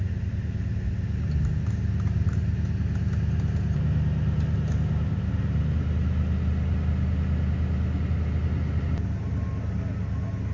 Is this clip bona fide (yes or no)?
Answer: yes